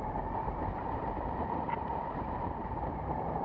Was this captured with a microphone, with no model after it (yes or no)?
no